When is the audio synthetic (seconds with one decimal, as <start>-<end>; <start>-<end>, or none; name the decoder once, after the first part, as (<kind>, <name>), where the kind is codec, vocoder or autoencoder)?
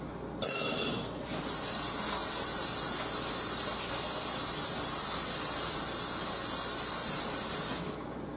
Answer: none